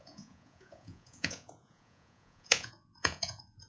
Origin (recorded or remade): remade